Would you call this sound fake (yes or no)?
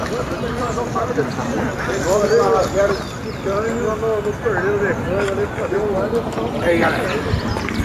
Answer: no